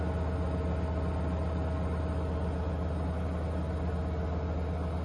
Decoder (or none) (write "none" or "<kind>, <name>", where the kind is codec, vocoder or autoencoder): none